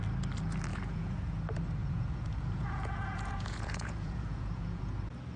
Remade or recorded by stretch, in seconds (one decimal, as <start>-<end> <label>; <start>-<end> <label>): 0.0-0.7 recorded; 0.7-1.4 remade; 1.4-1.8 recorded; 1.8-5.0 remade; 5.0-5.4 recorded